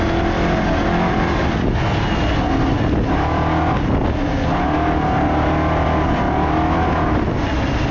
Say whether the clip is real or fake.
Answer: real